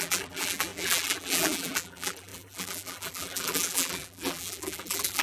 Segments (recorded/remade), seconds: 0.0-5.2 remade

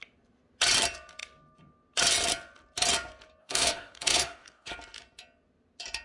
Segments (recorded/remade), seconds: 0.0-3.4 recorded; 3.4-4.7 remade; 4.7-6.0 recorded

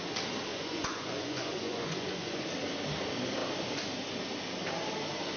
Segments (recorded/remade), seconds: 0.0-0.5 recorded; 0.5-2.4 remade; 2.4-5.4 recorded